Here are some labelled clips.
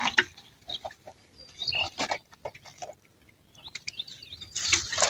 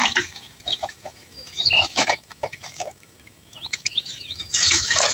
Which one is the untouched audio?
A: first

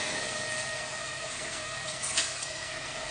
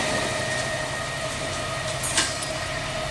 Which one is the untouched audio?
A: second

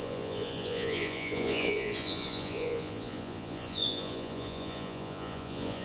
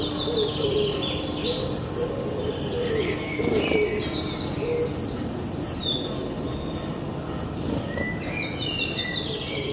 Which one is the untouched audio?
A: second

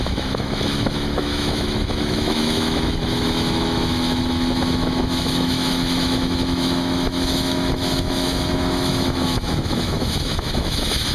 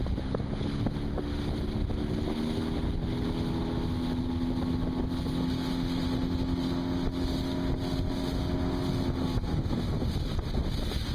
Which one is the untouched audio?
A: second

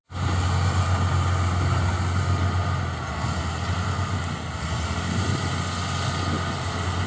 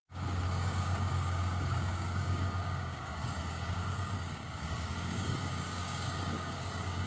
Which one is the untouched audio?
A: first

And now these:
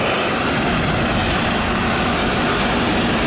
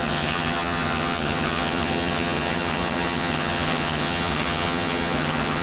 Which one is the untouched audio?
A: first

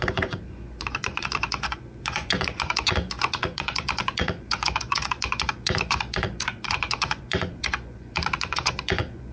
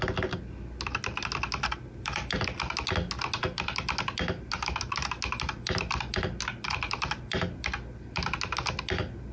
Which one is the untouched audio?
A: second